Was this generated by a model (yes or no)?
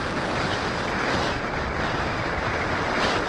no